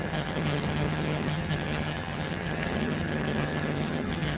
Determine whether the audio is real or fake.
fake